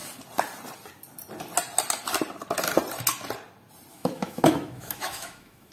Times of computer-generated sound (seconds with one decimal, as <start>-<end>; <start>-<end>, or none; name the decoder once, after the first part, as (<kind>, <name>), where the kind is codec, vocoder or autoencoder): 3.9-5.7 (autoencoder, DAC-VAE)